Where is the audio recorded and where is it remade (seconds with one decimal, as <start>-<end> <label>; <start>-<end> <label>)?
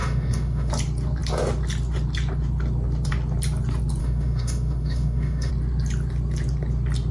0.0-0.7 remade; 0.7-4.0 recorded; 4.0-5.5 remade; 5.5-7.1 recorded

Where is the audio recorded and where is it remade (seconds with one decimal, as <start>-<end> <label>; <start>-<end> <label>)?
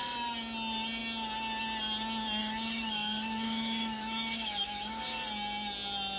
0.0-2.4 recorded; 2.4-5.0 remade; 5.0-6.2 recorded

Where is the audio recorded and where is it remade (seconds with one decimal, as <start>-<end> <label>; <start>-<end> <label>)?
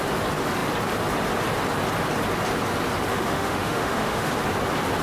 0.0-3.1 recorded; 3.1-4.3 remade; 4.3-5.0 recorded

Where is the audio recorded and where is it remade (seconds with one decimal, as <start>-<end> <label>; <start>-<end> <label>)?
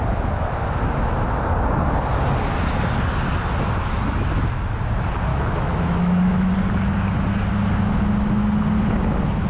0.0-5.3 recorded; 5.3-6.5 remade; 6.5-9.5 recorded